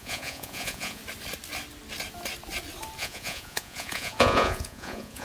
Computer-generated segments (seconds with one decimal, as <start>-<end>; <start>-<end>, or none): 0.0-1.0; 3.0-5.2